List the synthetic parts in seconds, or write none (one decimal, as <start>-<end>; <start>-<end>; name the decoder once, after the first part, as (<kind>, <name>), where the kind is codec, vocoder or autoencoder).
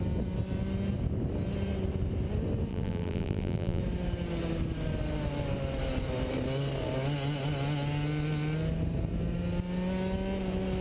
2.7-3.8 (vocoder, BigVGAN v2)